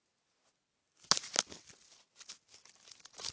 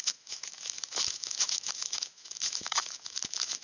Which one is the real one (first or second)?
first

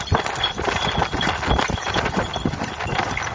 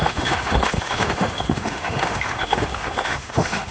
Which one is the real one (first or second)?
first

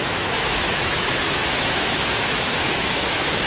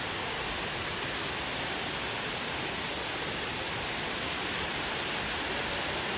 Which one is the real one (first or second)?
second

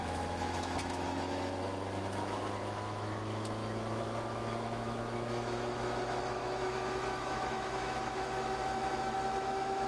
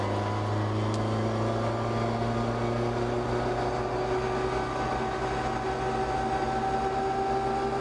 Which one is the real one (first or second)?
second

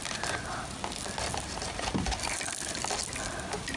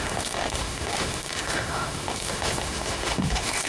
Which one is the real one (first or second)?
first